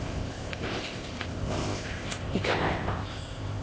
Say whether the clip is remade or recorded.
remade